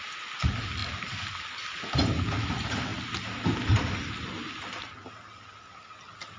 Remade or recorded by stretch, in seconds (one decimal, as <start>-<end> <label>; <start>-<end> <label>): 0.0-6.4 recorded